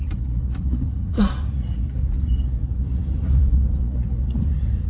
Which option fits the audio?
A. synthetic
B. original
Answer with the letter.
A